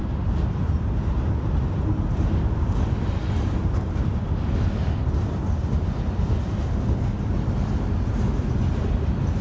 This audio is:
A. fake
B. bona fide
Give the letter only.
B